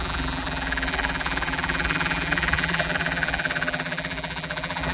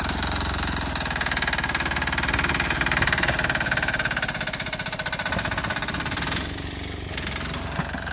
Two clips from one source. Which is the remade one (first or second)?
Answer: first